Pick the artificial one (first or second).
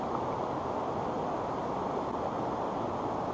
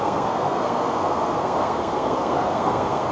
second